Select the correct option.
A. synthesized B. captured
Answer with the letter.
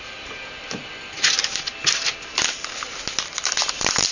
B